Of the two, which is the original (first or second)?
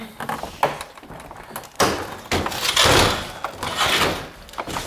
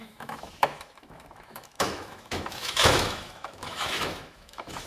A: first